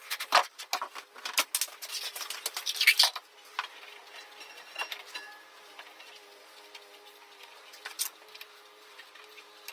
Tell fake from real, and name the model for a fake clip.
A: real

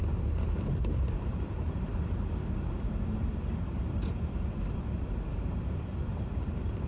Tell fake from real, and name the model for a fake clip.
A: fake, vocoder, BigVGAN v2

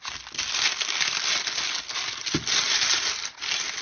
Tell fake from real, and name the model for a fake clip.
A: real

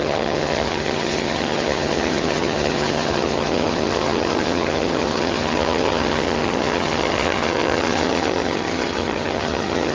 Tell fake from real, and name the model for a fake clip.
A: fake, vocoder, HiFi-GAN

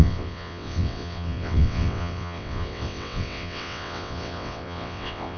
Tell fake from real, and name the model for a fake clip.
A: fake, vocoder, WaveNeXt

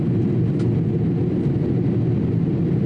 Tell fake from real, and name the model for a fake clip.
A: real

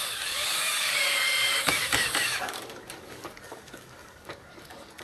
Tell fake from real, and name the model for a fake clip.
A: fake, codec, DAC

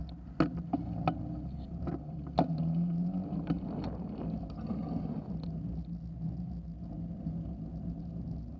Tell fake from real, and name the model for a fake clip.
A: real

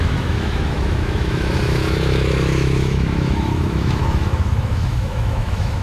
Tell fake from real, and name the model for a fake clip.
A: fake, autoencoder, DAC-VAE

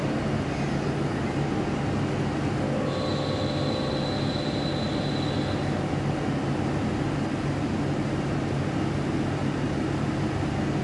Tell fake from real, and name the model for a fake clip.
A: real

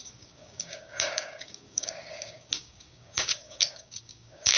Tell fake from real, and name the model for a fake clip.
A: fake, codec, DAC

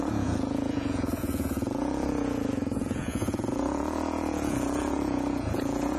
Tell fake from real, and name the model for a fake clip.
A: fake, vocoder, Vocos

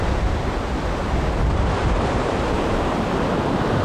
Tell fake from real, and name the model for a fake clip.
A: real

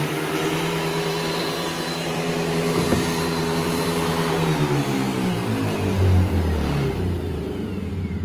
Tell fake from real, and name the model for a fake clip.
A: fake, vocoder, BigVGAN v2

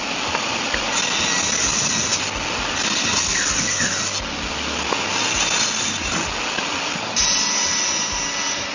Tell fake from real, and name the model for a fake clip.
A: real